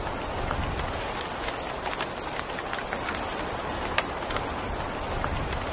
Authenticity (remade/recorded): recorded